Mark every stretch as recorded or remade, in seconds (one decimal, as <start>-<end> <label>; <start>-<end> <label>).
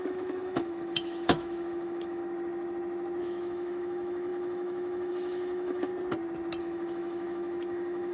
0.0-2.2 remade; 2.2-3.2 recorded; 3.2-5.9 remade; 5.9-6.6 recorded; 6.6-8.1 remade